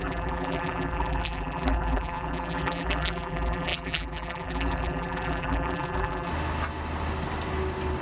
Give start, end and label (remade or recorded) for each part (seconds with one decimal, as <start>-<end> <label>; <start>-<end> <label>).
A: 0.0-6.3 remade; 6.3-8.0 recorded